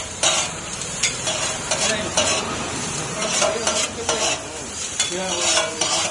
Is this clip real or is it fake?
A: fake